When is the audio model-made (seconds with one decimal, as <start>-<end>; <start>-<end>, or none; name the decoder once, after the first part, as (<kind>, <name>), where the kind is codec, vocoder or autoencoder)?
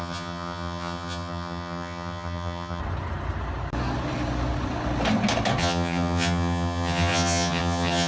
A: 0.0-2.8 (vocoder, HiFi-GAN); 5.6-8.1